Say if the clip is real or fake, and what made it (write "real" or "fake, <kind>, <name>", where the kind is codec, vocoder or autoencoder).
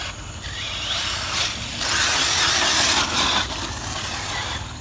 real